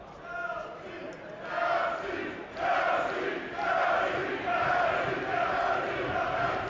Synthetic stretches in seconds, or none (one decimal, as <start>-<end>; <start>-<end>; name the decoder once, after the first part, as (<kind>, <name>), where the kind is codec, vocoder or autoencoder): none